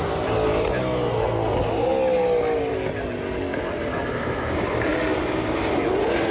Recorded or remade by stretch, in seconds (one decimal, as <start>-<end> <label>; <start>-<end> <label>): 0.0-6.3 recorded